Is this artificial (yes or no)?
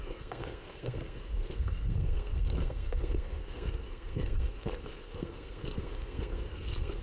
yes